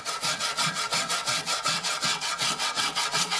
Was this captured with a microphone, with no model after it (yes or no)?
no